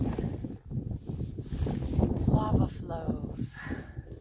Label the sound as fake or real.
real